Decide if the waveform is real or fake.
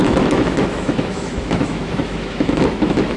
fake